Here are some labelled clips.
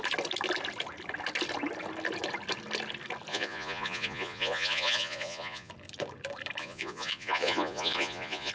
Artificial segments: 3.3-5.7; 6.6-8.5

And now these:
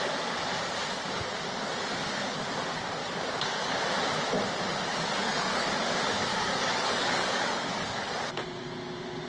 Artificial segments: 3.0-3.8; 4.9-5.7; 6.3-8.0

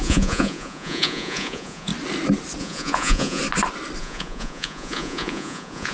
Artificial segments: 0.0-1.9; 2.6-3.4; 4.0-5.9

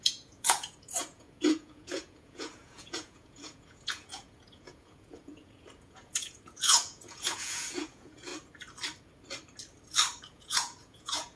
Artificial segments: 0.0-8.3; 10.2-11.4

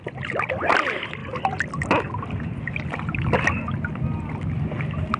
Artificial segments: none

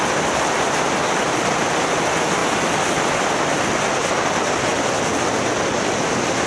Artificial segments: none